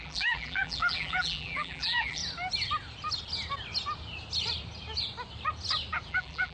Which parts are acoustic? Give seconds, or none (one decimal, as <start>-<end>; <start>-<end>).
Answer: 2.2-6.1